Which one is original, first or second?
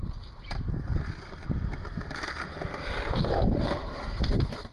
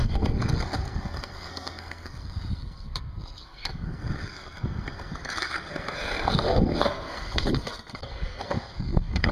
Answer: first